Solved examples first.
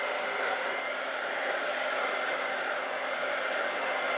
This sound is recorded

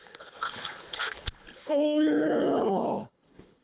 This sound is remade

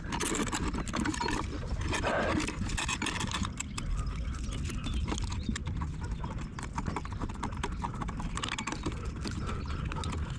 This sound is recorded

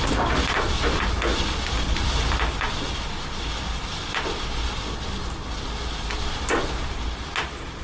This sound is recorded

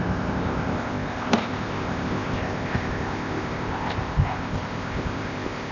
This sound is remade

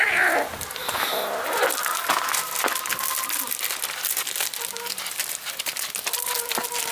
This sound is recorded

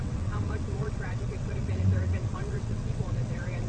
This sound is remade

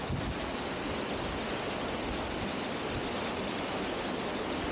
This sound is recorded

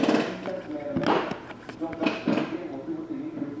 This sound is recorded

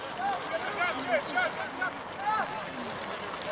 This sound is recorded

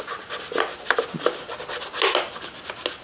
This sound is recorded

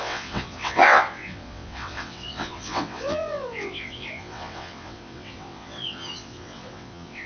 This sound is remade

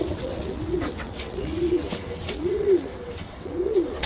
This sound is remade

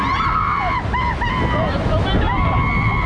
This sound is recorded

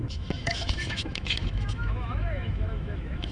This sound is remade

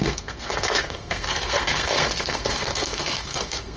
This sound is remade